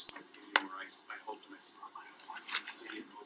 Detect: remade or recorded recorded